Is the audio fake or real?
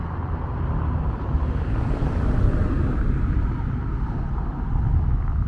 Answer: real